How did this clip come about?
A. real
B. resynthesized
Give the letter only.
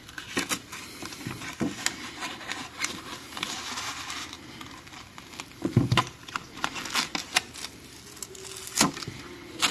A